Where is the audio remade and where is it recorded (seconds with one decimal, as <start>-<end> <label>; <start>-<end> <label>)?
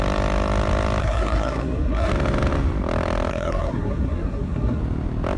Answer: 0.0-1.0 recorded; 1.0-2.1 remade; 2.1-3.3 recorded; 3.3-4.8 remade; 4.8-5.4 recorded